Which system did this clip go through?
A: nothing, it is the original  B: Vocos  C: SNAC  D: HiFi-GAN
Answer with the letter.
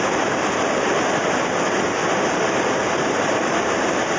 A